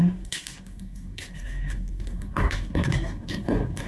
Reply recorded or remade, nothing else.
remade